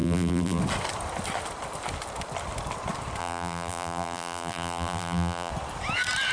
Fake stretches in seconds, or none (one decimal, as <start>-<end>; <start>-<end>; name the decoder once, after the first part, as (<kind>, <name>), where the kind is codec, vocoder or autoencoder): 0.0-0.6 (vocoder, BigVGAN v2); 3.2-5.5